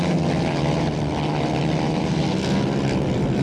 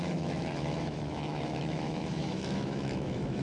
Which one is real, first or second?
first